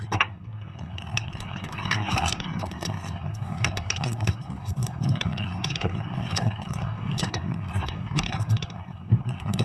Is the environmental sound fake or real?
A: fake